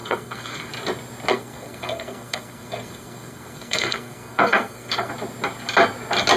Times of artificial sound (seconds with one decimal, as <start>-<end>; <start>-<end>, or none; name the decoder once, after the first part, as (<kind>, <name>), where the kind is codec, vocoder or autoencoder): 0.0-0.7 (codec, SNAC); 1.3-5.1